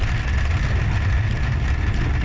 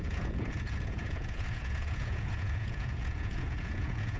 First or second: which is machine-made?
second